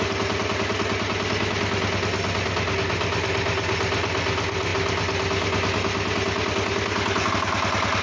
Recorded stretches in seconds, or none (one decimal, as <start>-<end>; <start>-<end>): 0.0-8.0

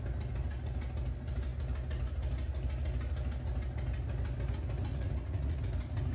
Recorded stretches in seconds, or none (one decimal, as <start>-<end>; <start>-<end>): 0.0-4.9; 5.6-6.1

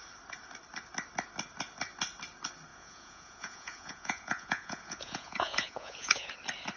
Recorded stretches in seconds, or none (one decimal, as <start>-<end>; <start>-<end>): 0.0-2.7; 6.3-6.8